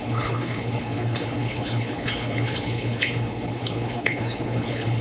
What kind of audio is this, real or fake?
fake